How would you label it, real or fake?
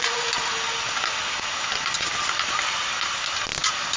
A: real